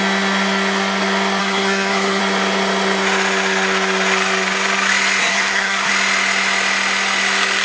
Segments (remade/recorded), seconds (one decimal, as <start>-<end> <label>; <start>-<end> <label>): 0.0-1.4 recorded; 1.4-2.2 remade; 2.2-5.2 recorded; 5.2-5.9 remade; 5.9-7.6 recorded